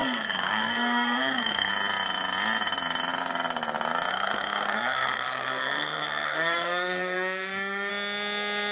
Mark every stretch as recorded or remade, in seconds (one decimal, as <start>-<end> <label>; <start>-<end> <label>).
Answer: 0.0-1.7 remade; 1.7-4.1 recorded; 4.1-7.9 remade; 7.9-8.7 recorded